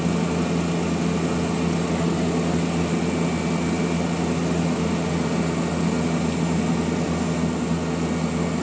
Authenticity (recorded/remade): recorded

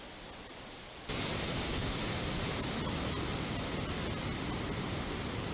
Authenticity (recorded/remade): recorded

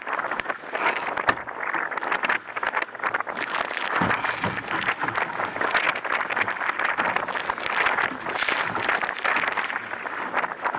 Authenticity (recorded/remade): recorded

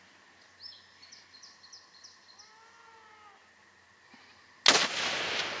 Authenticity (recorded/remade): recorded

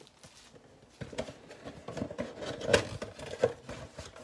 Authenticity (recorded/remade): recorded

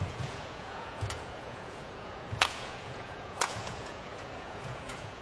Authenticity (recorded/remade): remade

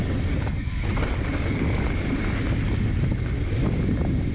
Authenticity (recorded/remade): recorded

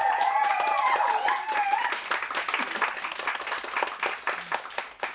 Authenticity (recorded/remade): recorded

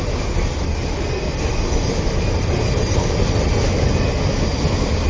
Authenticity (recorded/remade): recorded